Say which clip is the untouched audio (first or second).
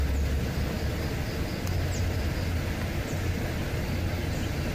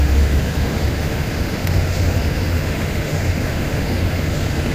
first